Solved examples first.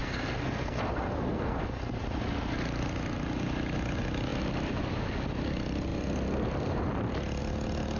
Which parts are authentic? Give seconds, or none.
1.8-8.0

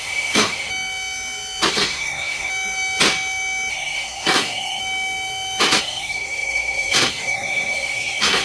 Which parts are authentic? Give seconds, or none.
0.7-1.7; 2.5-3.7; 4.8-5.8

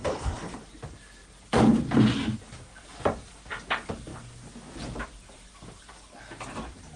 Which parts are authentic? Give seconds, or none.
0.6-7.0

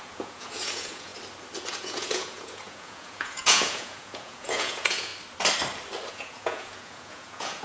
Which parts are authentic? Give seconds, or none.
1.1-1.7; 5.1-6.1

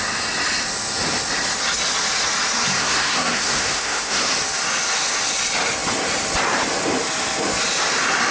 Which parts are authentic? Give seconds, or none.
0.0-2.8; 4.3-8.3

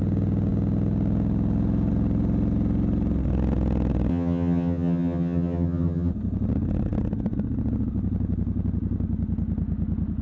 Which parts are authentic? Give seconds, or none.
0.0-4.1; 6.1-10.2